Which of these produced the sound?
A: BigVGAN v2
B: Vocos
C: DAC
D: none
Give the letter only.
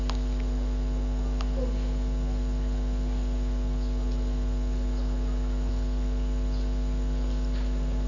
D